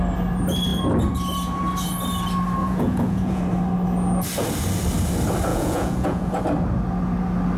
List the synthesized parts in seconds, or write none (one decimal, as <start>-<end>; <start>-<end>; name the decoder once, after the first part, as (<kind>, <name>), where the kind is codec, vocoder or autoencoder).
2.6-3.4 (vocoder, Vocos); 5.5-6.4